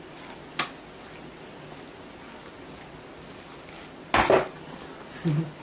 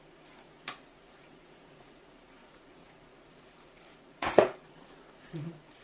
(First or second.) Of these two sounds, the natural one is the first